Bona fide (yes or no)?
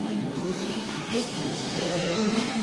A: no